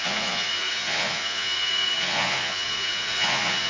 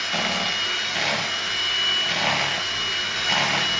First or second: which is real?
second